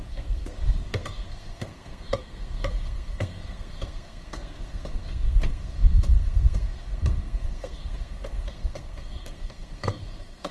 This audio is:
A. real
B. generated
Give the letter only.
B